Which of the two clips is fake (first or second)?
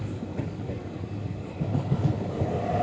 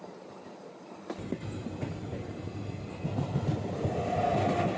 first